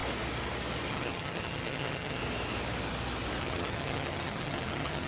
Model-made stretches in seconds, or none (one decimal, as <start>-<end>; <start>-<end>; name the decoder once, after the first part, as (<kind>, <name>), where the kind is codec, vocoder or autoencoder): 0.9-2.2 (vocoder, HiFi-GAN); 3.4-5.1